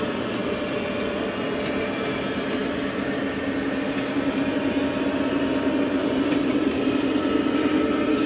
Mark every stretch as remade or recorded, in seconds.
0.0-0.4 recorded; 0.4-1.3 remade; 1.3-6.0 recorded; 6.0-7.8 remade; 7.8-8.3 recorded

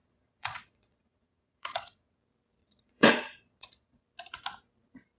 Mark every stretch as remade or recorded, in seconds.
0.0-2.2 remade; 2.2-2.6 recorded; 2.6-4.0 remade; 4.0-5.2 recorded

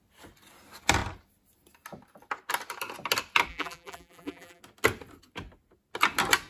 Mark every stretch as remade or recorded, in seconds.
0.0-3.5 recorded; 3.5-4.6 remade; 4.6-6.5 recorded

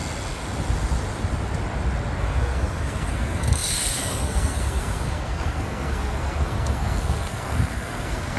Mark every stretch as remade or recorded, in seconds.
0.0-2.2 recorded; 2.2-8.4 remade

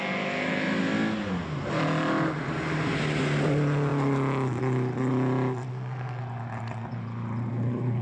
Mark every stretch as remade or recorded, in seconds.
0.0-5.7 recorded; 5.7-6.2 remade; 6.2-8.0 recorded